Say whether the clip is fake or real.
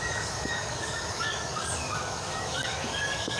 fake